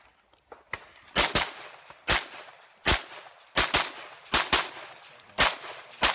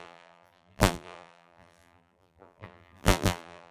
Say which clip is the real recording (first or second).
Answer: first